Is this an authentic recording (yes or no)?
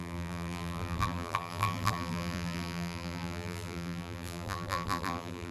no